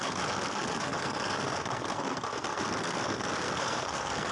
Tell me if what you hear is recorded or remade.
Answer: remade